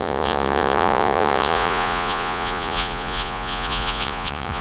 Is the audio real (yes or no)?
no